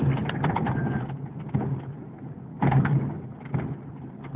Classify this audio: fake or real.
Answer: real